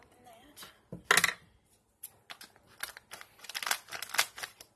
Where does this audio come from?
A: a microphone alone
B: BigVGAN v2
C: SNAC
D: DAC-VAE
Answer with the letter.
A